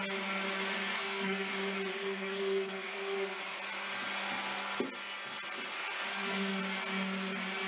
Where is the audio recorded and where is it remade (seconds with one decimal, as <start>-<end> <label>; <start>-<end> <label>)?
0.0-0.9 recorded; 0.9-1.5 remade; 1.5-1.9 recorded; 1.9-3.4 remade; 3.4-6.1 recorded; 6.1-6.6 remade; 6.6-7.7 recorded